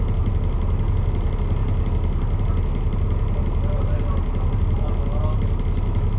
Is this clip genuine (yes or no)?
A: yes